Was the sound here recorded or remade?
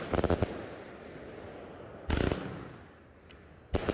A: recorded